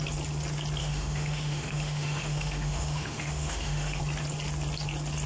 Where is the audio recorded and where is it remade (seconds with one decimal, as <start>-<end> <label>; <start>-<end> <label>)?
0.0-0.8 recorded; 0.8-4.0 remade; 4.0-5.3 recorded

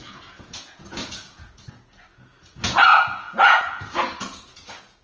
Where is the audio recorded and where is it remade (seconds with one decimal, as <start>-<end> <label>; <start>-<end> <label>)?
0.0-5.0 remade

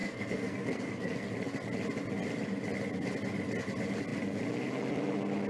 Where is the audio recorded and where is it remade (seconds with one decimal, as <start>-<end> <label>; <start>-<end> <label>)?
0.0-1.3 remade; 1.3-5.5 recorded

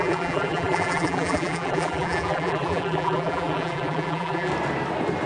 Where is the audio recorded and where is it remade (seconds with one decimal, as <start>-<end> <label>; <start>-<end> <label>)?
0.0-4.5 remade; 4.5-5.3 recorded